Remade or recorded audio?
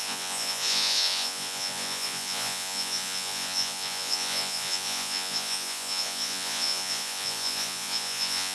remade